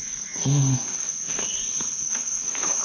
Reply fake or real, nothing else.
fake